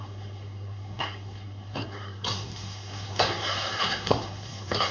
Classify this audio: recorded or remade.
remade